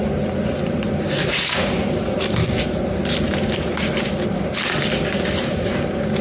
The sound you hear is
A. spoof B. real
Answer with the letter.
B